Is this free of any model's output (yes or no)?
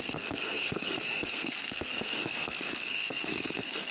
no